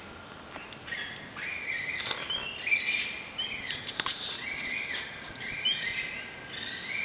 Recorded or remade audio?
recorded